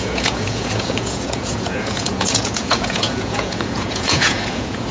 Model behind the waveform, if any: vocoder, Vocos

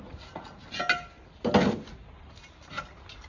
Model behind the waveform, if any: none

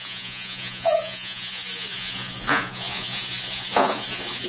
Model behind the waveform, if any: vocoder, Vocos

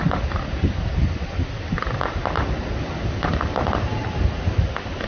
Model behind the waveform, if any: none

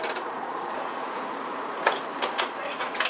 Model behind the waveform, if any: vocoder, Vocos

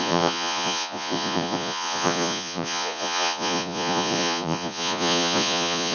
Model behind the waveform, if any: vocoder, Vocos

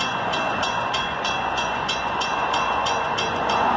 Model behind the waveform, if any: vocoder, Vocos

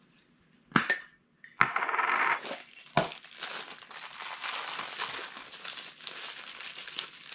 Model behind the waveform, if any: none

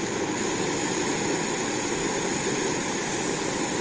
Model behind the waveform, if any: none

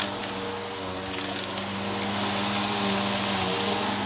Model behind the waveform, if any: none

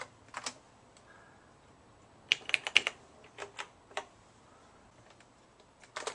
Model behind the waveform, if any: none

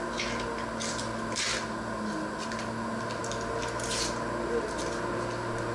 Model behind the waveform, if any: none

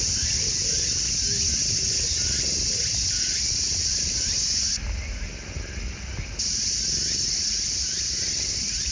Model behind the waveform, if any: none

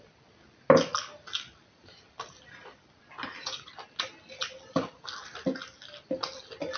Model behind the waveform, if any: none